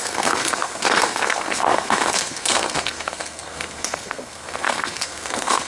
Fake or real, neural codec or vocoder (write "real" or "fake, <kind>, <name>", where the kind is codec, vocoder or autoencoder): fake, codec, SNAC